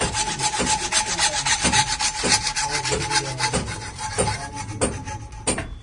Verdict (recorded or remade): recorded